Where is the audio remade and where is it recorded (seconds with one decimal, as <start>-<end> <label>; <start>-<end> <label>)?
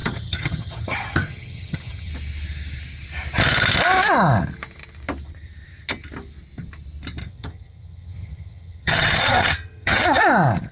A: 0.0-2.1 remade; 2.1-7.2 recorded; 7.2-10.2 remade; 10.2-10.7 recorded